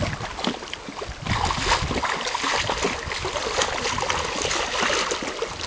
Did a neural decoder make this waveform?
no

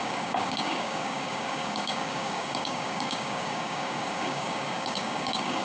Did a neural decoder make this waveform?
yes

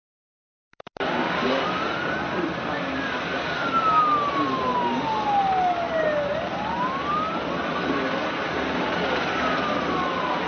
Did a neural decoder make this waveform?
no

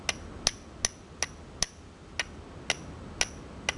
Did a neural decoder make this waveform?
no